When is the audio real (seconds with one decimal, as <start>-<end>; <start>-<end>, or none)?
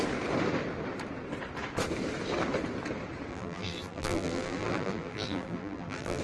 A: 0.0-3.3